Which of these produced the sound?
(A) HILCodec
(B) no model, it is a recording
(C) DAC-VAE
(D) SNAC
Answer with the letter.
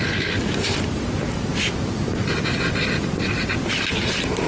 B